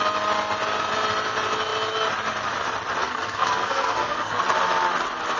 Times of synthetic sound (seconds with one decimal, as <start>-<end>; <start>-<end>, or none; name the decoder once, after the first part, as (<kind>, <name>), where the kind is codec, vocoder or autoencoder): 3.0-4.4 (codec, SNAC)